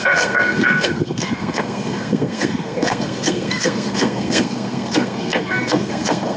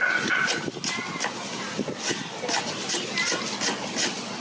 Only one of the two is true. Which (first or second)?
second